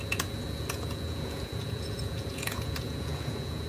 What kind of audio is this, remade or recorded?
remade